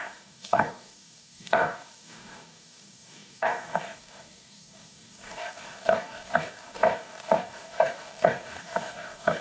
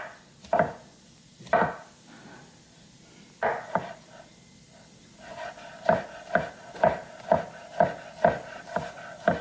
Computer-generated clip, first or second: first